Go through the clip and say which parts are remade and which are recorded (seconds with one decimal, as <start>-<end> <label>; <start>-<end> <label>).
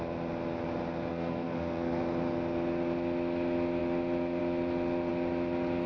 0.0-1.1 recorded; 1.1-2.0 remade; 2.0-5.9 recorded